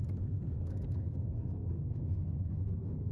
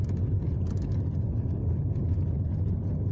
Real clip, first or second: second